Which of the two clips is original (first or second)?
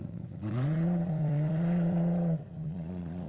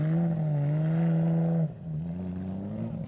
second